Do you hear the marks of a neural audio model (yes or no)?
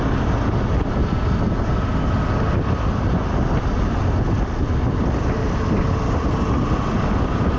no